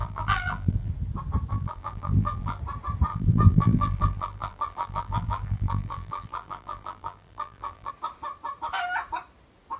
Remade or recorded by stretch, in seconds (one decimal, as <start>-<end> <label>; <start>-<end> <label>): 0.0-0.9 remade; 0.9-1.5 recorded; 1.5-2.6 remade; 2.6-3.1 recorded; 3.1-7.9 remade; 7.9-9.8 recorded